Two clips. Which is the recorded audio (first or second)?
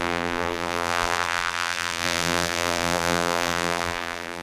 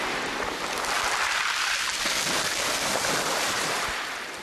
second